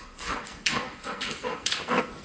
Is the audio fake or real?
fake